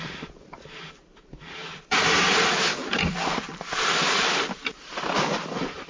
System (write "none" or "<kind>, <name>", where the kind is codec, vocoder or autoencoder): vocoder, BigVGAN v2